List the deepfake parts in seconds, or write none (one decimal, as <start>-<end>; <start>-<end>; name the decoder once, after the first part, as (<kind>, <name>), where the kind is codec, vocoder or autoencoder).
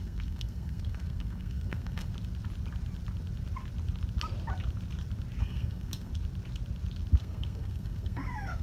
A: 0.0-2.1 (codec, SNAC); 5.4-6.1; 7.2-8.6